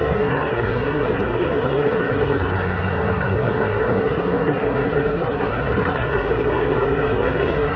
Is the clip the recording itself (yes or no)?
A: no